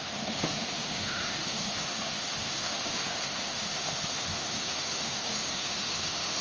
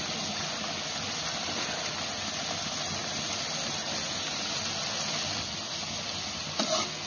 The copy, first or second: first